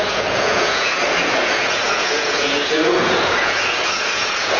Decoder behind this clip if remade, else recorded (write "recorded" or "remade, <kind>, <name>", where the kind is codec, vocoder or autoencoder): remade, vocoder, Vocos